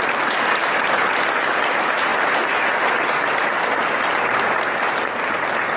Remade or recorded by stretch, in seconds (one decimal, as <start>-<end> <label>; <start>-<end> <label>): 0.0-2.1 recorded; 2.1-4.6 remade; 4.6-5.8 recorded